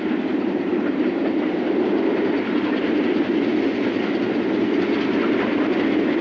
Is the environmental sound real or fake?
real